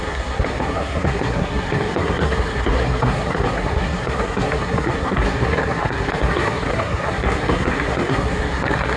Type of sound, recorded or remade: remade